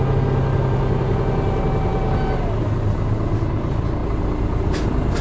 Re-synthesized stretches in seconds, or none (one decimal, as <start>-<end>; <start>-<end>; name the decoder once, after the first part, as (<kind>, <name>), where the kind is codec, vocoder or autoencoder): none

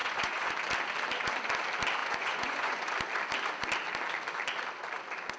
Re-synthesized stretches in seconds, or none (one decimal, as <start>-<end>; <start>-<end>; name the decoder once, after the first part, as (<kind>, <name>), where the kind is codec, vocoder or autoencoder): 0.0-0.5 (vocoder, Vocos); 2.0-2.9

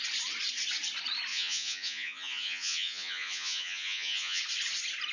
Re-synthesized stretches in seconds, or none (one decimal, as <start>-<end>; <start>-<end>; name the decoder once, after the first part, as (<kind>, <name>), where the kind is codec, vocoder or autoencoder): 1.3-4.4 (vocoder, Vocos)

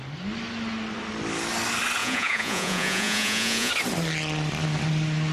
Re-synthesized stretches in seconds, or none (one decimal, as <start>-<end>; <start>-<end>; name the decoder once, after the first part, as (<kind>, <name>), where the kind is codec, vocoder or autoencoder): 2.0-3.7 (vocoder, Vocos)

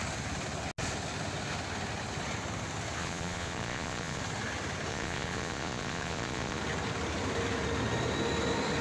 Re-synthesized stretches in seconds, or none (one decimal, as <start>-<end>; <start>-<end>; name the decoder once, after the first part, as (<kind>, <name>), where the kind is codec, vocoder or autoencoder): 3.0-4.2 (vocoder, Vocos); 4.9-6.6